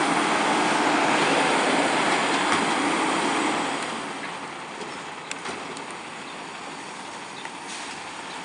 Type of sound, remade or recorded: recorded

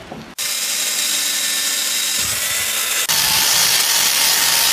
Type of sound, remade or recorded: recorded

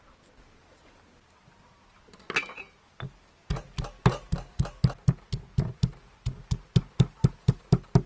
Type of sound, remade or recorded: recorded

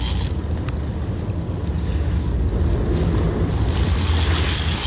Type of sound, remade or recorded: recorded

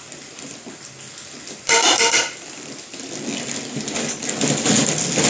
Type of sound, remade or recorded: recorded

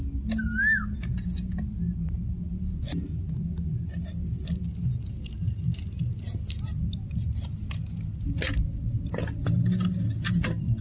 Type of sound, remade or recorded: recorded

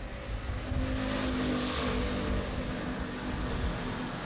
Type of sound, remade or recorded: recorded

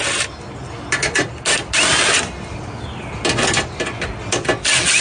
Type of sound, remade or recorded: recorded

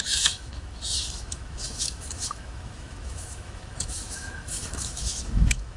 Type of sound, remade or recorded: remade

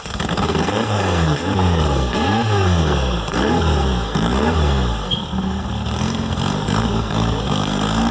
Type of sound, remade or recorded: remade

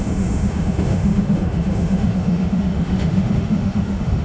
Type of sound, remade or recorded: remade